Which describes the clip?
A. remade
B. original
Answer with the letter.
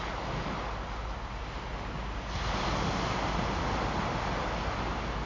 B